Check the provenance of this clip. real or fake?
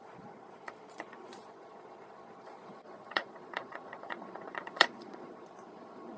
fake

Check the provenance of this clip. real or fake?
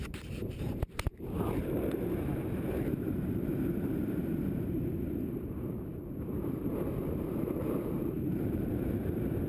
fake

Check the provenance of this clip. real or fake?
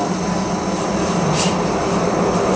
real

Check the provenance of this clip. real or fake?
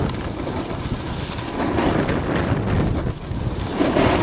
real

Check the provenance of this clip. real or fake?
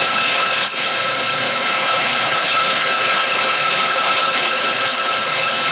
fake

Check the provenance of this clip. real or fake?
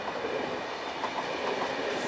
real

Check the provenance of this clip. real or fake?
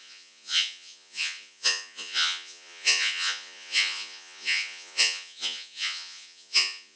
fake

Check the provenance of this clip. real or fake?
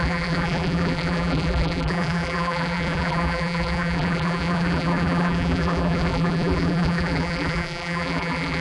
fake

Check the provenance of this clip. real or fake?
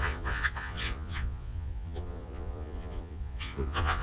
fake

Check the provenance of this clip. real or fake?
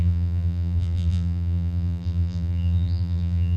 fake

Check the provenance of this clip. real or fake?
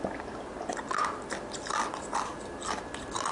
real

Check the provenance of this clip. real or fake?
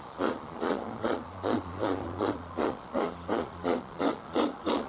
fake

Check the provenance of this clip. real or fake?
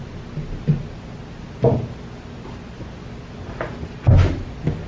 real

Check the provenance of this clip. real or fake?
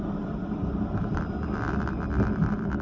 real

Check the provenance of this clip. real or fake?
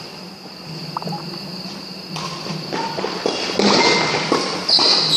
real